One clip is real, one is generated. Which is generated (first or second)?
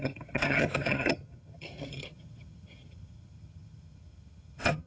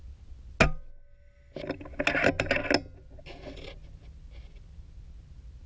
first